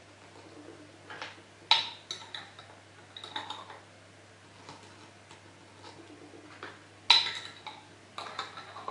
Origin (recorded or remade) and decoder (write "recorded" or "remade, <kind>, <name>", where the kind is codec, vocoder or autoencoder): recorded